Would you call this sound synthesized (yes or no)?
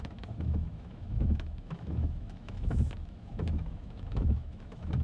yes